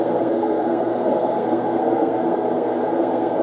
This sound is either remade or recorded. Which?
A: remade